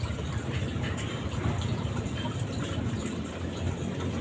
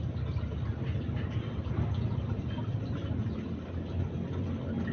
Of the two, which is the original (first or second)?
second